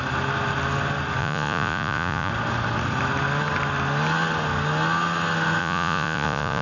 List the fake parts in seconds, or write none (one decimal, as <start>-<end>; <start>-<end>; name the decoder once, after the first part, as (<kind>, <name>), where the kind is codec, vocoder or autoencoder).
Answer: 1.2-2.3 (vocoder, Vocos); 5.6-6.6